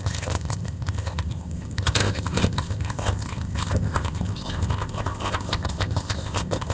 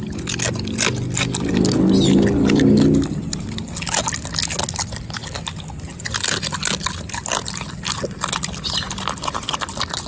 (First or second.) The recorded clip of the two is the second